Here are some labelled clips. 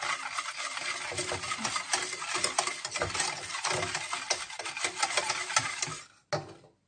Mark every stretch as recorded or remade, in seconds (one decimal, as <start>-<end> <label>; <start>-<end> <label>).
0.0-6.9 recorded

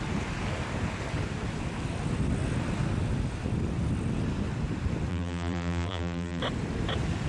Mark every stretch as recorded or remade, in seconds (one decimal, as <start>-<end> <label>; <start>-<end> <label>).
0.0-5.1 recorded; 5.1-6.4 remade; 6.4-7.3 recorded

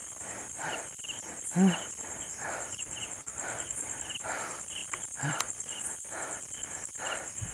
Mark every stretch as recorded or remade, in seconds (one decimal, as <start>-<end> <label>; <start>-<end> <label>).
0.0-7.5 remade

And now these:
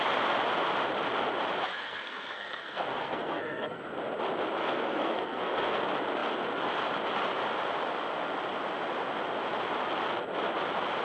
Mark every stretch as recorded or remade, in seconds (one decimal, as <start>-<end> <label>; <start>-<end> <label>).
0.0-1.7 recorded; 1.7-3.8 remade; 3.8-4.6 recorded; 4.6-5.8 remade; 5.8-11.0 recorded

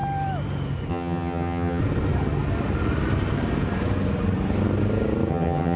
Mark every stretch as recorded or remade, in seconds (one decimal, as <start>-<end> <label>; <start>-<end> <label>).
0.0-0.9 recorded; 0.9-1.8 remade; 1.8-5.3 recorded; 5.3-5.8 remade

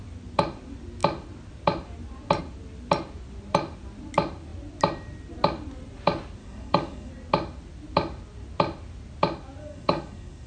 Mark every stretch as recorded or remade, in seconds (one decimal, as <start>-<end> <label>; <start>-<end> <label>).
0.0-6.4 recorded; 6.4-7.1 remade; 7.1-9.6 recorded; 9.6-10.5 remade

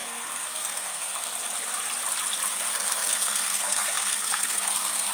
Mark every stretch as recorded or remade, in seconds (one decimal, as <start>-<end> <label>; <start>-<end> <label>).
0.0-1.3 remade; 1.3-2.5 recorded; 2.5-5.1 remade